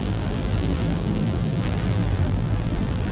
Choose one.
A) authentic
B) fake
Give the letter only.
B